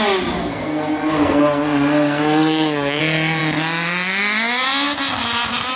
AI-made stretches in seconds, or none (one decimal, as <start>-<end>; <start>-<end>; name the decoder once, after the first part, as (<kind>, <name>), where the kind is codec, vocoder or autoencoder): 0.4-3.0 (codec, SNAC)